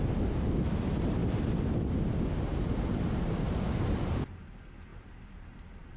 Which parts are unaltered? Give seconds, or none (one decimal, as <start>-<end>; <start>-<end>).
0.0-6.0